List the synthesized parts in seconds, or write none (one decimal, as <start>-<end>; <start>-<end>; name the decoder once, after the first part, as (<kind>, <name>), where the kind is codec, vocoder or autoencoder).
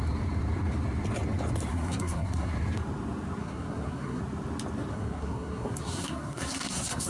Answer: 1.7-2.5 (codec, SNAC); 3.4-4.2; 4.9-7.1